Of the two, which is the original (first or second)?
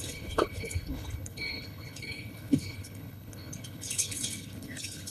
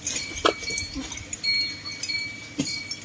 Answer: second